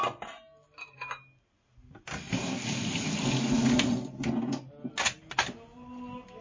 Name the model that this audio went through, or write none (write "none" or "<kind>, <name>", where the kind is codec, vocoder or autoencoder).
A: none